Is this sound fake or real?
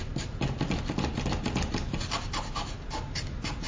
real